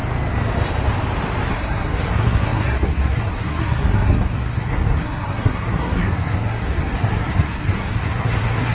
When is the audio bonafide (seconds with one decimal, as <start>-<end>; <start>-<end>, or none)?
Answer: 0.0-1.5